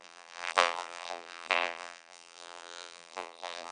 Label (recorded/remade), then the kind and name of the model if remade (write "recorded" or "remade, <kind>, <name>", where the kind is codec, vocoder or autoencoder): remade, vocoder, BigVGAN v2